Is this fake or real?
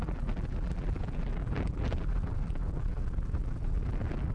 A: fake